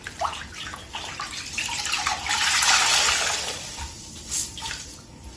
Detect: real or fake real